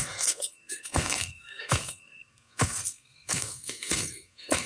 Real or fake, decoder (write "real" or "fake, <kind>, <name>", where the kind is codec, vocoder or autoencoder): fake, codec, SNAC